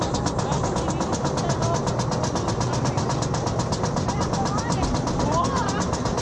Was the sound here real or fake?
real